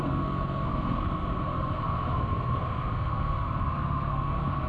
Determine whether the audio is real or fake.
fake